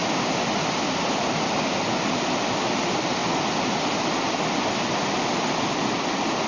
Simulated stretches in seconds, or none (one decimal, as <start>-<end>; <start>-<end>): none